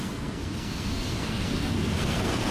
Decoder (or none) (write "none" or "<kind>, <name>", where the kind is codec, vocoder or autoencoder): codec, SNAC